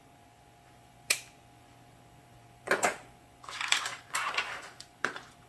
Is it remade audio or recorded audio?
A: remade